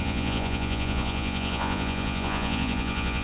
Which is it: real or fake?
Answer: fake